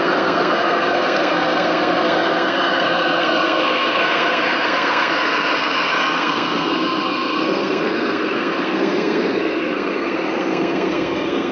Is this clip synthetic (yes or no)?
yes